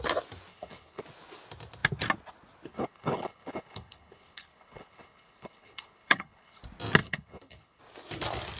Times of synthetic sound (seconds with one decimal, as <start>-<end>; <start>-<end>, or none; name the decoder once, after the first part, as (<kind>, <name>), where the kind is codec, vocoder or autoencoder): 0.5-1.0 (codec, HILCodec); 2.7-6.6; 7.0-7.8